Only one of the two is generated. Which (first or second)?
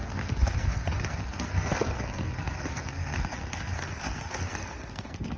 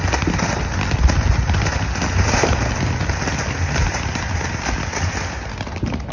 first